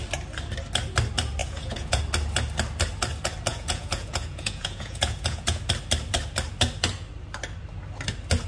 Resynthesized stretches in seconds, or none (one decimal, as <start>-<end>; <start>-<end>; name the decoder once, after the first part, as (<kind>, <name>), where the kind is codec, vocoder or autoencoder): 1.4-2.0 (vocoder, Vocos); 3.5-5.6